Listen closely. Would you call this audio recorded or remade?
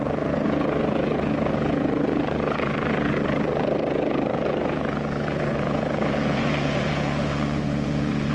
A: remade